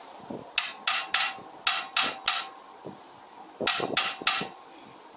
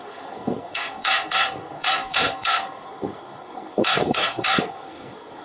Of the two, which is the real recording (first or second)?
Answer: first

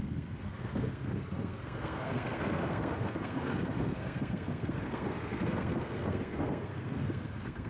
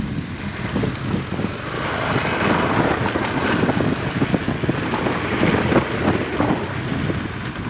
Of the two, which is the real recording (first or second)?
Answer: second